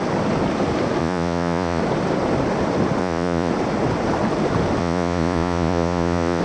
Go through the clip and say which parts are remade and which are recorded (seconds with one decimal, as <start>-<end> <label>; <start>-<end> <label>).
0.0-1.0 recorded; 1.0-1.8 remade; 1.8-3.0 recorded; 3.0-3.5 remade; 3.5-4.8 recorded; 4.8-6.4 remade